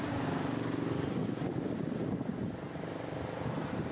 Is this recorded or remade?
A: recorded